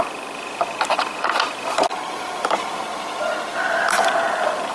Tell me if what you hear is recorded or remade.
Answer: recorded